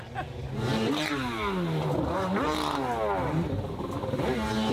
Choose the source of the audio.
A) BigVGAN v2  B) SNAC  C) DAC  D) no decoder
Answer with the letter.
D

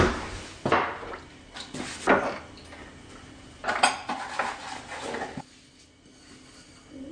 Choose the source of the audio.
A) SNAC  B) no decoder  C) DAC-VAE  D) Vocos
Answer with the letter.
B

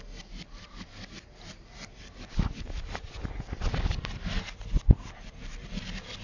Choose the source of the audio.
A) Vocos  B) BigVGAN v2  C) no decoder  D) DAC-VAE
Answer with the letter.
C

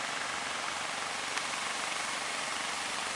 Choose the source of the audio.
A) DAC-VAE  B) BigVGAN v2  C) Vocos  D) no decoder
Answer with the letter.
D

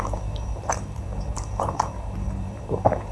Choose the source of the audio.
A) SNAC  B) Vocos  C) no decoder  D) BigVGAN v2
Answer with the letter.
D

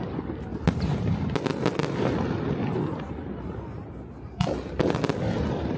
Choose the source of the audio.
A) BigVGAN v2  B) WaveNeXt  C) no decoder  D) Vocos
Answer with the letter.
C